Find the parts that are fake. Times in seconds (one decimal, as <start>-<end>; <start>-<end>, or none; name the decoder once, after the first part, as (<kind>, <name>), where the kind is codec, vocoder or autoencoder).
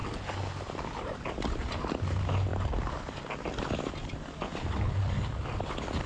none